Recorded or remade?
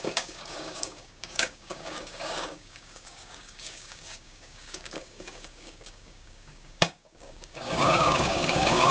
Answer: remade